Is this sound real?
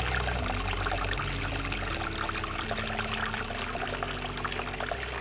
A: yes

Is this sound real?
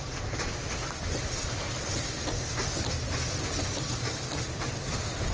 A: yes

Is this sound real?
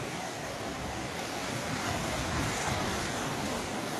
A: no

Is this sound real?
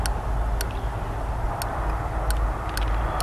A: yes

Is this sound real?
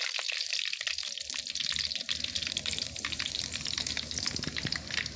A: yes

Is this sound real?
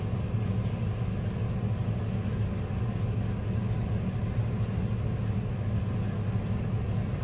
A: yes